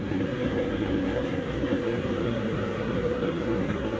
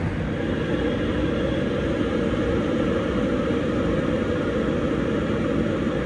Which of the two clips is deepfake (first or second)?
first